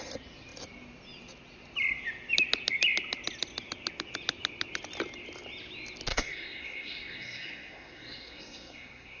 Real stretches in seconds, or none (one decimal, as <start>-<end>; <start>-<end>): 0.0-6.1